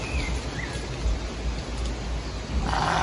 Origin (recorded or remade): recorded